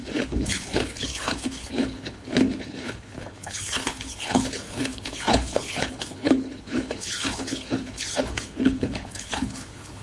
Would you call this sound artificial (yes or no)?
yes